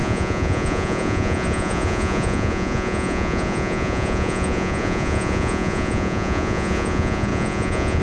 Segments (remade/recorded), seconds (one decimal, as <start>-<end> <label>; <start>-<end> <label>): 0.0-8.0 remade